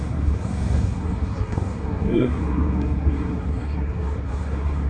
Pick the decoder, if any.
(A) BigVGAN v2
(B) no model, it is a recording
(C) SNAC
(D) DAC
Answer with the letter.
C